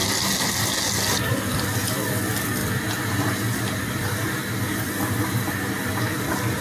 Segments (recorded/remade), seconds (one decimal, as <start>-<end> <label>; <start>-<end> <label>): 0.0-6.6 recorded